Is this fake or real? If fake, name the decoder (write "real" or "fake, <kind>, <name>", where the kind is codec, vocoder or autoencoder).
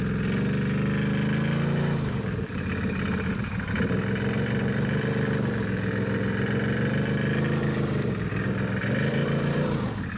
real